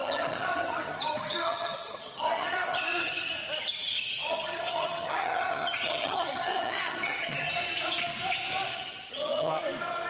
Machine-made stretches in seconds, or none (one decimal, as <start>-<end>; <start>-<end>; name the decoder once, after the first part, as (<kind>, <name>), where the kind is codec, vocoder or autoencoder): 0.0-3.3 (vocoder, HiFi-GAN); 3.8-7.5; 8.7-9.5